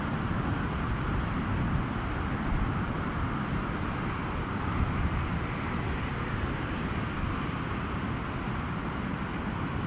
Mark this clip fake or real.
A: real